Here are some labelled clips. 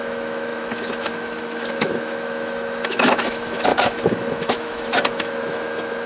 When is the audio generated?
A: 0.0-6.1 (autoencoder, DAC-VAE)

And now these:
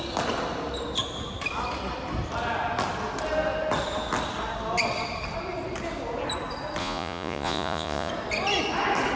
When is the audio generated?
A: 6.8-8.1 (vocoder, Vocos)

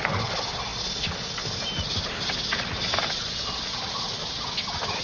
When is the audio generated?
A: none